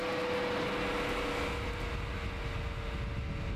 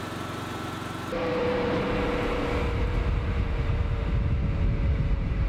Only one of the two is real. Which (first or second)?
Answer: first